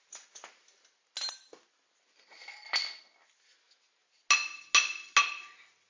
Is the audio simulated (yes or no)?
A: no